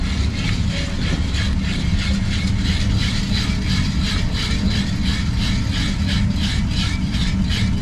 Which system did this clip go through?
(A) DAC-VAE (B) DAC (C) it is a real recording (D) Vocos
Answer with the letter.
C